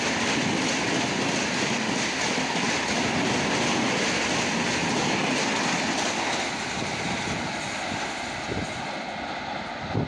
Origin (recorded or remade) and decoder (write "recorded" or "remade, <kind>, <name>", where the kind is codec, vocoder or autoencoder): recorded